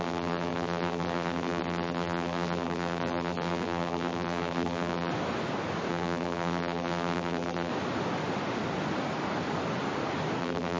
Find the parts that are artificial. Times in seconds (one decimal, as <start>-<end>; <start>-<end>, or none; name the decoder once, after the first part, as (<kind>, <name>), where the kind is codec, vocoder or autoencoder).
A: 0.0-5.1 (vocoder, BigVGAN v2); 5.9-7.7; 10.4-10.8